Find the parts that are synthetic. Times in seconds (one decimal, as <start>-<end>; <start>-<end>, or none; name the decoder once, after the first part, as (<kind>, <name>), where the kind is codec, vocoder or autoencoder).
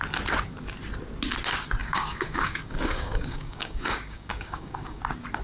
1.8-5.0 (codec, DAC)